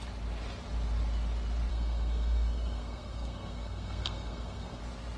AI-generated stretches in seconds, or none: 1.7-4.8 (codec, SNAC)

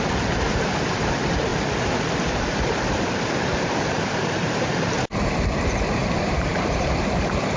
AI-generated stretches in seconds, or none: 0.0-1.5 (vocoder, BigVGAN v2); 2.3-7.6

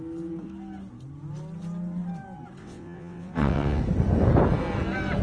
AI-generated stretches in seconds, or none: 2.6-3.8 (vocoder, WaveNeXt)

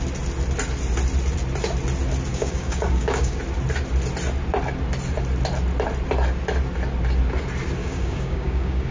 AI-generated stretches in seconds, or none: 2.3-3.4 (codec, DAC); 7.8-8.9

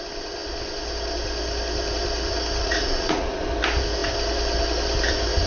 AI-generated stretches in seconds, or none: 2.6-3.4 (vocoder, Vocos)

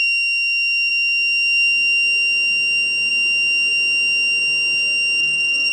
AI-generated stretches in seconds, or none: 5.2-5.7 (codec, SNAC)

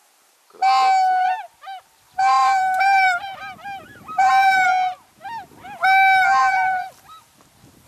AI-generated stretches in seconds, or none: 2.4-4.3 (vocoder, BigVGAN v2); 6.4-7.1

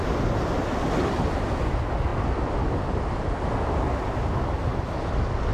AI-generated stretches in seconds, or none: none